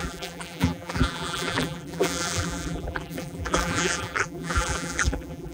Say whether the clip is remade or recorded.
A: remade